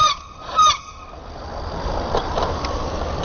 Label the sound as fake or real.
real